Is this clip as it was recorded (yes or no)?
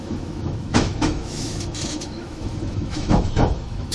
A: no